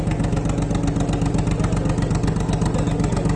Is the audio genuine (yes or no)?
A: yes